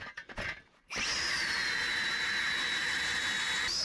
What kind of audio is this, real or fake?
real